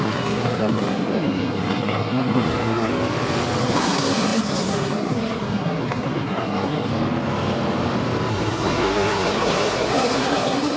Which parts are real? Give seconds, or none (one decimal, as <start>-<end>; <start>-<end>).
2.9-3.6; 6.9-8.3